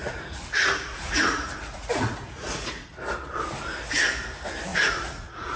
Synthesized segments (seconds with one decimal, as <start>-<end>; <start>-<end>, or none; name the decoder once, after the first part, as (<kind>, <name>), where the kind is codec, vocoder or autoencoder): 0.0-2.9 (vocoder, Vocos); 4.7-5.6